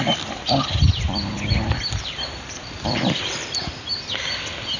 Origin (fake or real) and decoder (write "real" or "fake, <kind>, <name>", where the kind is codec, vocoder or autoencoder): real